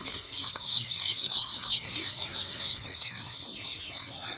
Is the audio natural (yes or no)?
no